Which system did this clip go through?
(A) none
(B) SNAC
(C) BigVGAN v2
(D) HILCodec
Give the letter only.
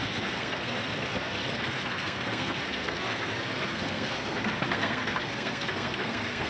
B